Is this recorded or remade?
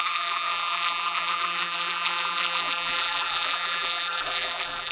remade